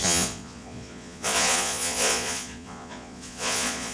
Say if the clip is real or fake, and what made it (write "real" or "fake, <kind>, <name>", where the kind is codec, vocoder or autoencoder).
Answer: fake, vocoder, Vocos